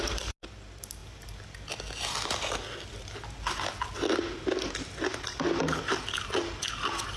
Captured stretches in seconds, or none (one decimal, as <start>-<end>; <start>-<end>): 0.0-7.2